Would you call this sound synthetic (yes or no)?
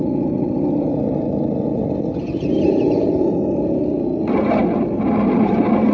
no